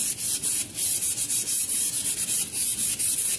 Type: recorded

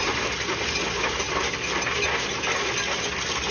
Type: recorded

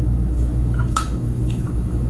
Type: remade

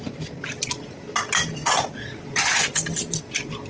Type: recorded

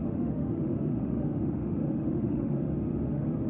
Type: remade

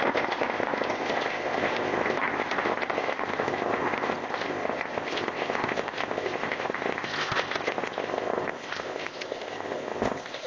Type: remade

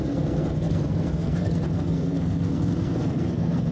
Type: remade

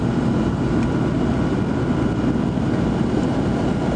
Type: recorded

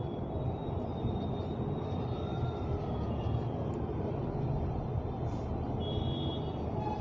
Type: recorded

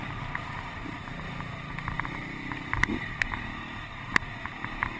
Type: recorded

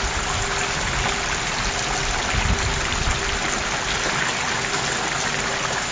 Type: recorded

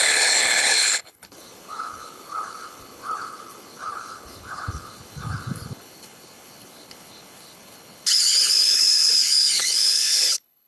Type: remade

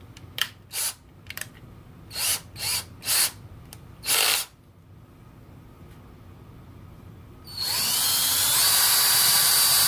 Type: recorded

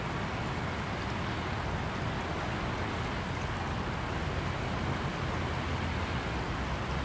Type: recorded